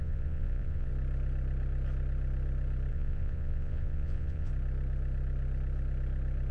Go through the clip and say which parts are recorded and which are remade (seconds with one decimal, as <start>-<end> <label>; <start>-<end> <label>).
0.0-0.9 remade; 0.9-2.9 recorded; 2.9-4.5 remade; 4.5-6.5 recorded